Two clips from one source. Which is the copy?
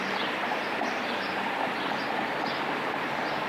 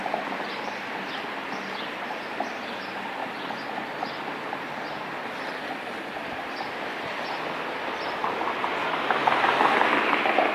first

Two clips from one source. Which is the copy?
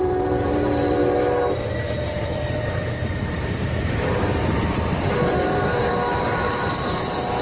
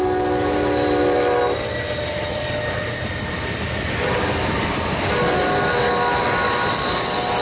first